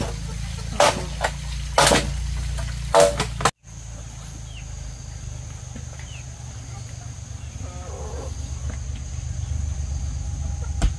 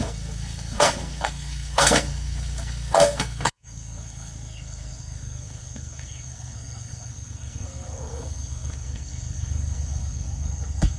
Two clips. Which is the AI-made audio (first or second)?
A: second